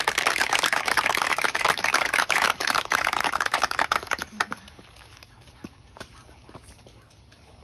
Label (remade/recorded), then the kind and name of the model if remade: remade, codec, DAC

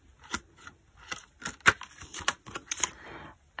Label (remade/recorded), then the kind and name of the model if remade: recorded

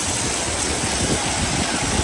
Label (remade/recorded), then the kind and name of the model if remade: recorded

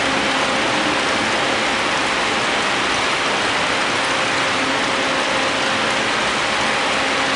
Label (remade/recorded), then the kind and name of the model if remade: recorded